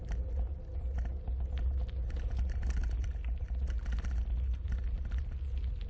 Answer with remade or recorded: recorded